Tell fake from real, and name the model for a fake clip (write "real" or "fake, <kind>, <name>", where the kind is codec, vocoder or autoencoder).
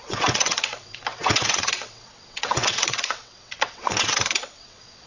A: fake, vocoder, WaveNeXt